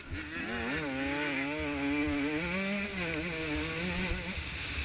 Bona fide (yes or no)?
yes